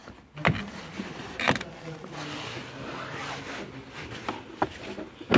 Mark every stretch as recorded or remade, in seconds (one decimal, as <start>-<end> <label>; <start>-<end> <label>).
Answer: 0.0-5.4 recorded